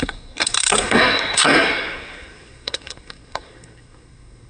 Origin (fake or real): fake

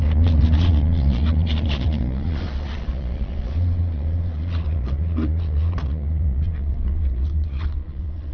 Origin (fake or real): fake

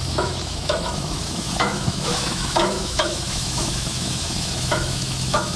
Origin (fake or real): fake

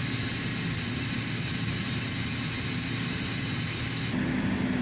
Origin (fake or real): real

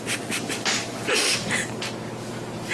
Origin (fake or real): real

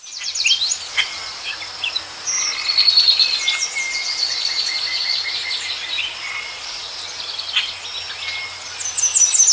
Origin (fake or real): real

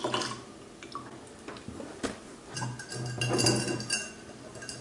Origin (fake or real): real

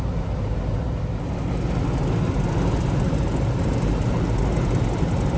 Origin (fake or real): real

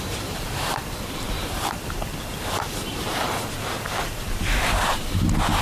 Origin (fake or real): fake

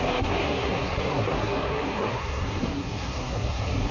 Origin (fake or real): fake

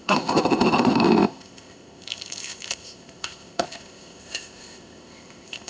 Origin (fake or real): fake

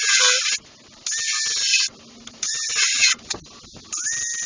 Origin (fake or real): real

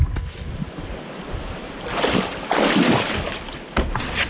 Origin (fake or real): real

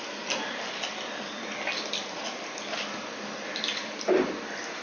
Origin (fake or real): real